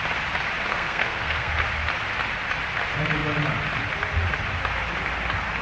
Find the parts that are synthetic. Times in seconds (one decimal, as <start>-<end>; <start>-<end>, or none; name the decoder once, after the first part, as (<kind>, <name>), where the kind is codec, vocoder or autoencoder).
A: 0.7-1.5 (codec, SNAC)